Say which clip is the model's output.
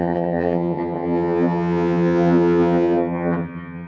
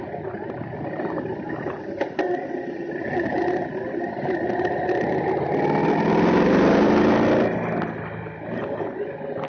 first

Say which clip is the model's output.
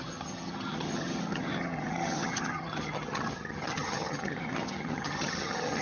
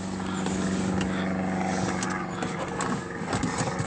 first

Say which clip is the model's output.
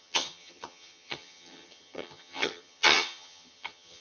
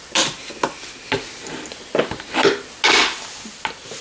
first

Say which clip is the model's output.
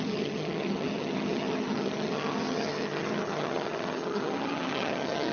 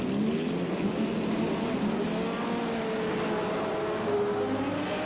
first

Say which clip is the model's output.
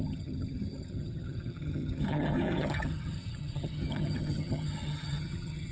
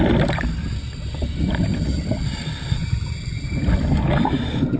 first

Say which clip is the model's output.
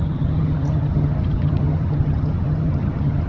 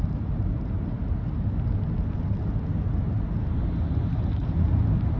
first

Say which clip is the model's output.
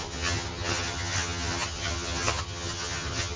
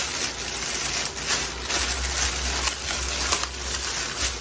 first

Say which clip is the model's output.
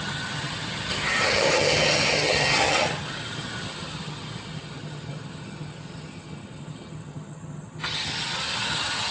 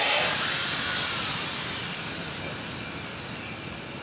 first